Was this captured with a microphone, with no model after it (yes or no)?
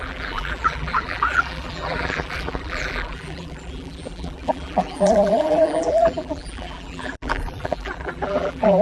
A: no